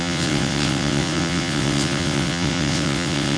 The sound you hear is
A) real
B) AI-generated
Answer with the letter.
B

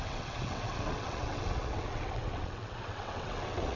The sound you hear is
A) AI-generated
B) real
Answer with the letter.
A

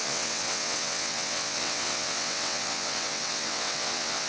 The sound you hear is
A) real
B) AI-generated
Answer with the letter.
B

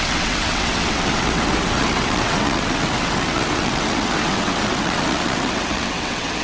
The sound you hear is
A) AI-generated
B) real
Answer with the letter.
A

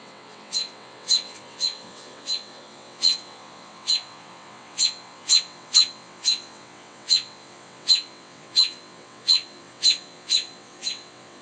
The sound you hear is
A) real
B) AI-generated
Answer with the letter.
B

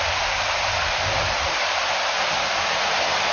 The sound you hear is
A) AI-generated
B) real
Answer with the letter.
B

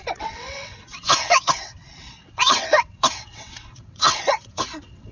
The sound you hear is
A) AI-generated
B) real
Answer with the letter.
A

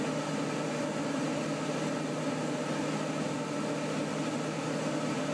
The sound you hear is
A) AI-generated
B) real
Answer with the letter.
B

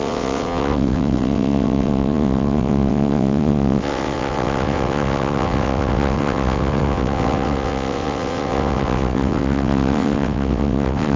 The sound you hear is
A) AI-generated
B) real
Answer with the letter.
A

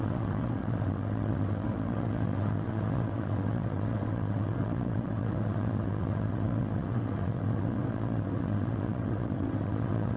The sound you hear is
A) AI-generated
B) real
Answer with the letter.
A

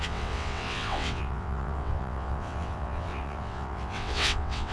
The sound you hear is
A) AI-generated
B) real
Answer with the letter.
A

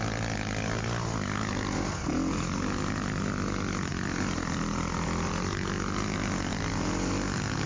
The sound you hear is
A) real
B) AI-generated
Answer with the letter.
A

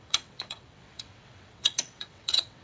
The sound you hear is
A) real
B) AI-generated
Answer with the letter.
B